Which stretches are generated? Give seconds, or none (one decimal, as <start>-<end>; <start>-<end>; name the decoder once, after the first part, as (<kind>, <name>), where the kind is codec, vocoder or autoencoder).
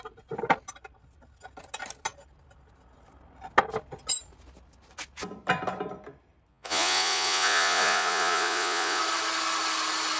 6.5-9.0 (vocoder, Vocos)